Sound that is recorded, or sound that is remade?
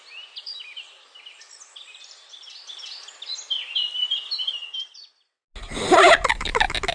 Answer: recorded